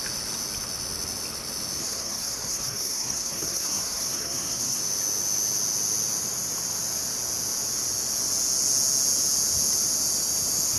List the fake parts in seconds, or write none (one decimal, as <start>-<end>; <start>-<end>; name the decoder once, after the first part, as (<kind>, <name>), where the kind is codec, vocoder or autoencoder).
1.8-4.8 (codec, SNAC)